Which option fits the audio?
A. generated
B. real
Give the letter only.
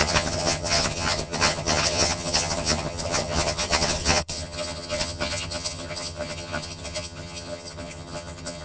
A